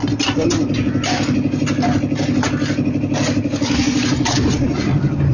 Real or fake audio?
real